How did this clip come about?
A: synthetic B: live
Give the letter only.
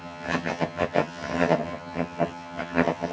A